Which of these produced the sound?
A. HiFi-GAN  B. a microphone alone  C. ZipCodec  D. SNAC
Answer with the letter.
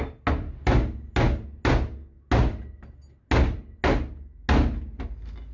B